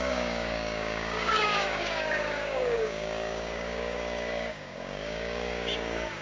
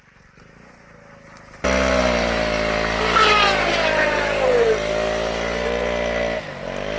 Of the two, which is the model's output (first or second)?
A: first